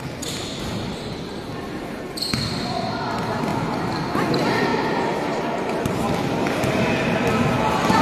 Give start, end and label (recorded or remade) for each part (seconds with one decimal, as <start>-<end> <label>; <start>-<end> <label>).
0.0-4.7 recorded; 4.7-5.9 remade; 5.9-8.0 recorded